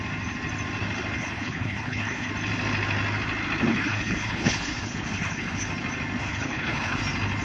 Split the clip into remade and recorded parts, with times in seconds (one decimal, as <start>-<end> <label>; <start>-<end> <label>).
0.0-1.2 recorded; 1.2-2.3 remade; 2.3-3.7 recorded; 3.7-5.7 remade; 5.7-6.2 recorded; 6.2-7.0 remade; 7.0-7.4 recorded